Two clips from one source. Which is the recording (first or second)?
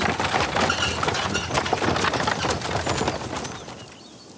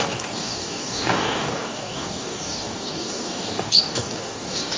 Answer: first